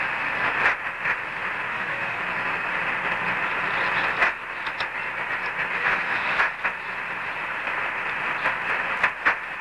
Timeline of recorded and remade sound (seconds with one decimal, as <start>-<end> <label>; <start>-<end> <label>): 0.0-1.7 recorded; 1.7-2.2 remade; 2.2-5.8 recorded; 5.8-6.4 remade; 6.4-9.6 recorded